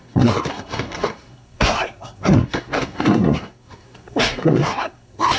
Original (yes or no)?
no